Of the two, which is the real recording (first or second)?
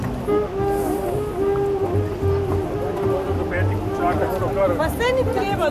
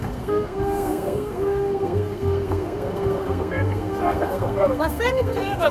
first